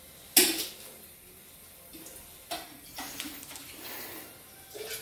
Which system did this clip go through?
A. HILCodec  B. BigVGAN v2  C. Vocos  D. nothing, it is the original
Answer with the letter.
D